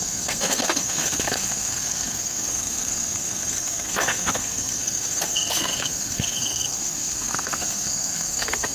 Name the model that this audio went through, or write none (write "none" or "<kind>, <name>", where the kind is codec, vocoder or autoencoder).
codec, SNAC